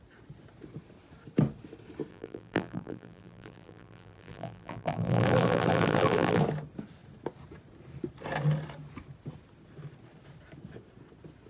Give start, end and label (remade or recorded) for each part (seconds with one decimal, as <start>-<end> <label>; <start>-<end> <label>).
0.0-2.1 recorded; 2.1-6.4 remade; 6.4-11.5 recorded